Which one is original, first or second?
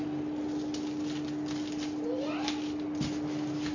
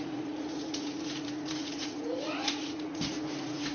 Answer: first